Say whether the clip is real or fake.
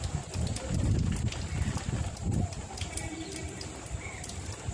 fake